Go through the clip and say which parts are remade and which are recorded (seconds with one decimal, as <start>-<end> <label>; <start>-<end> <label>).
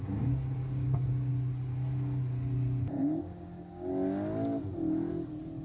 0.0-0.6 recorded; 0.6-1.3 remade; 1.3-3.0 recorded; 3.0-3.9 remade; 3.9-5.6 recorded